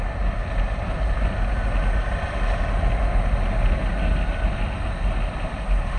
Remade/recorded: recorded